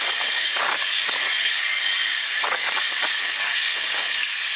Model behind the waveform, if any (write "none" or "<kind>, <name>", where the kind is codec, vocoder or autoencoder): codec, DAC